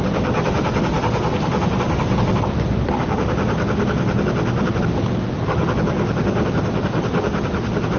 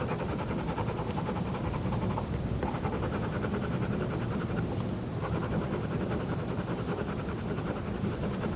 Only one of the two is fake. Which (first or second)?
second